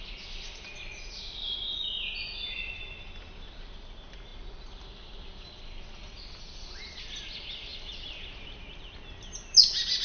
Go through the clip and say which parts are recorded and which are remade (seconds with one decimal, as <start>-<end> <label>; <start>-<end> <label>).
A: 0.0-10.0 recorded